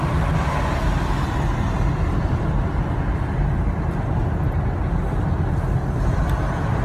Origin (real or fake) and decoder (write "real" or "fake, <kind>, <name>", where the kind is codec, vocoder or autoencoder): real